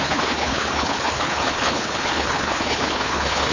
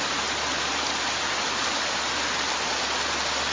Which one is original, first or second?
second